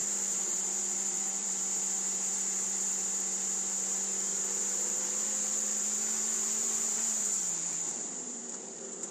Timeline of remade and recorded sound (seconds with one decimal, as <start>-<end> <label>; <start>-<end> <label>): 0.0-1.5 remade; 1.5-4.3 recorded; 4.3-8.4 remade; 8.4-9.1 recorded